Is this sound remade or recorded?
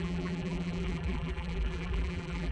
remade